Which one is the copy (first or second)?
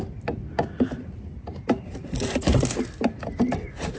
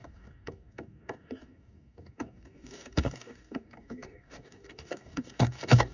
second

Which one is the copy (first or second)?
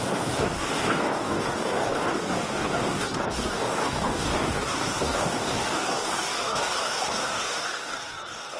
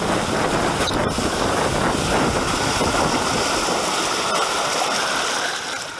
first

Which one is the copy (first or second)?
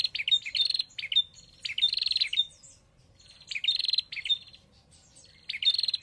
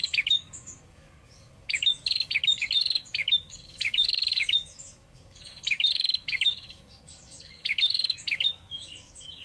second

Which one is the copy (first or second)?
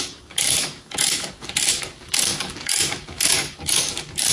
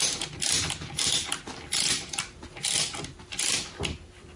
first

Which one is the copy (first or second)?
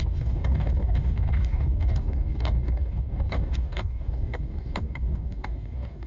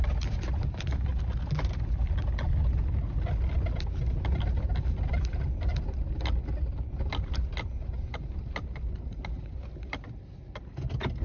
first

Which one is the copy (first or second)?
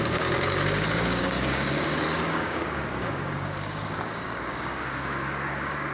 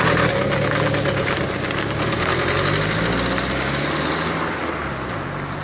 first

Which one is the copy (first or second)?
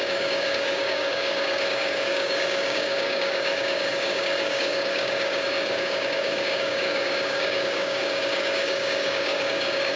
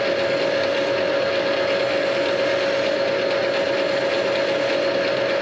first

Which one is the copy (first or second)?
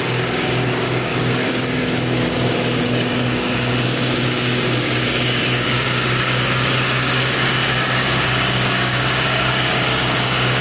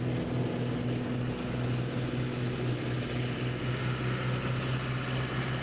first